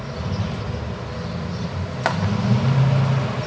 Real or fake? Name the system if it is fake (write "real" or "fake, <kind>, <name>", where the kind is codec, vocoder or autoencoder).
real